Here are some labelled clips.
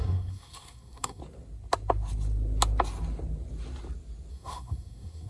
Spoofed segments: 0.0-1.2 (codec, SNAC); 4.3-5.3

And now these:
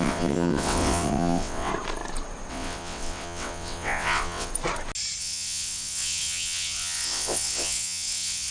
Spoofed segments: 0.0-1.7 (vocoder, WaveNeXt); 2.5-4.5; 5.2-8.5

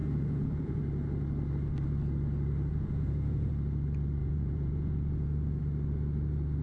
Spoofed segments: 0.0-0.8 (vocoder, Vocos); 2.7-3.5; 4.2-5.6

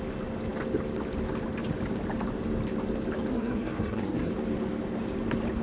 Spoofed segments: 3.3-4.3 (codec, SNAC)

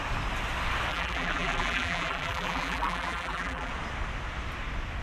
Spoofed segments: 0.9-3.7 (vocoder, BigVGAN v2)